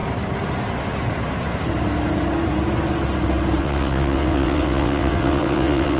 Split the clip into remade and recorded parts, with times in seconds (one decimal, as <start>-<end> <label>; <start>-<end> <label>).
0.0-3.6 recorded; 3.6-6.0 remade